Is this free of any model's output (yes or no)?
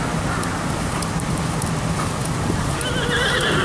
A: yes